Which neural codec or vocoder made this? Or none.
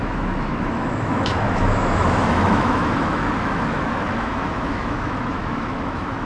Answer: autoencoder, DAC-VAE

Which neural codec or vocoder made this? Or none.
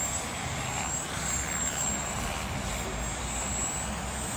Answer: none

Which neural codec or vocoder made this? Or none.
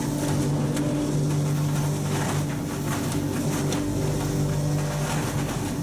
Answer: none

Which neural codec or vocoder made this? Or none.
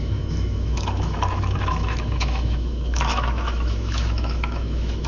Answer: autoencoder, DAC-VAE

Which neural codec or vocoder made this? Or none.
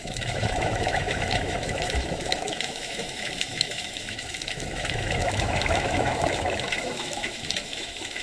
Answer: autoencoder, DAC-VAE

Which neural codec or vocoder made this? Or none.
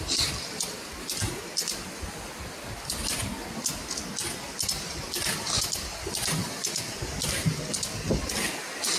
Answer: none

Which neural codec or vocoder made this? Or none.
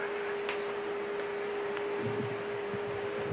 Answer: none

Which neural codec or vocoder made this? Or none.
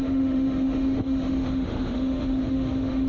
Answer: autoencoder, DAC-VAE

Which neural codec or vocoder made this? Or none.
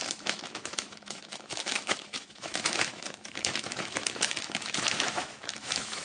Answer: autoencoder, DAC-VAE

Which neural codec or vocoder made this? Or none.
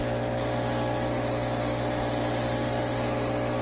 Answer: none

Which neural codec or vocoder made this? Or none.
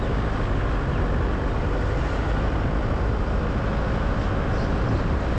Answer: none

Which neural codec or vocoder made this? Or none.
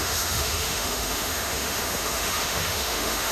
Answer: autoencoder, DAC-VAE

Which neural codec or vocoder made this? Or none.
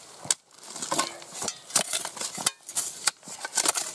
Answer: none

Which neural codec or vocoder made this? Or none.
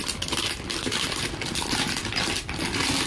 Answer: none